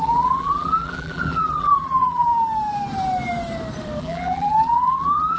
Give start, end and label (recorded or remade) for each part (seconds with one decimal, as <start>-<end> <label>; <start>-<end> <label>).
0.0-2.3 remade; 2.3-4.0 recorded; 4.0-5.4 remade